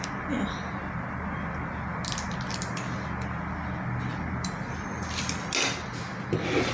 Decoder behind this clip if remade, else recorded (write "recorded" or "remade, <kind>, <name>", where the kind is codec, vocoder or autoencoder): recorded